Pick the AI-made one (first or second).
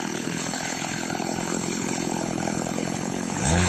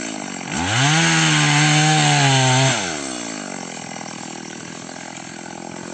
first